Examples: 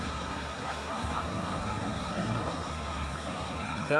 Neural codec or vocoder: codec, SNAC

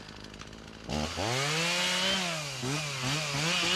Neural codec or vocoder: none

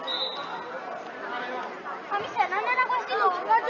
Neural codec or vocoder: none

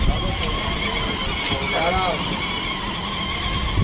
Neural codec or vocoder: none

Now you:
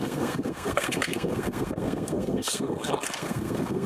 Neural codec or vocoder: codec, SNAC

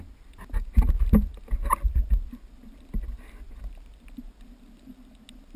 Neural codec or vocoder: none